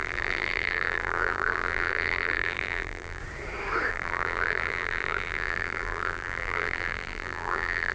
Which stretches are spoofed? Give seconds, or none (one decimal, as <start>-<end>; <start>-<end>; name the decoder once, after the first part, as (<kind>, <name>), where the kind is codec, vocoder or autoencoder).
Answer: 0.0-3.2 (vocoder, BigVGAN v2); 3.9-7.9